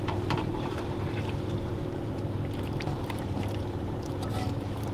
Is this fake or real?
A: fake